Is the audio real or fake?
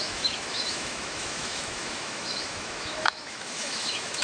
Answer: fake